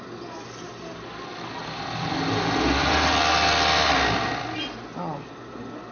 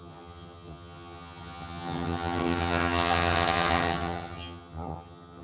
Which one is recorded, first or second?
first